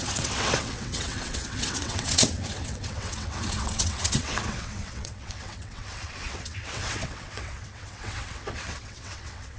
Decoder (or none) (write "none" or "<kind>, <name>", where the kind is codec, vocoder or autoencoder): vocoder, WaveNeXt